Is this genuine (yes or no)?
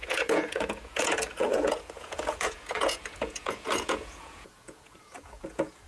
no